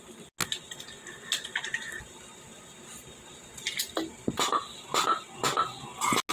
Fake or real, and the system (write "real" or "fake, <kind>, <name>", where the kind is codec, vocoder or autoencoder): real